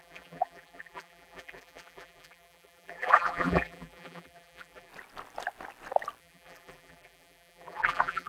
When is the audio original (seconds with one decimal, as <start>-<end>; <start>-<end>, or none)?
4.9-6.2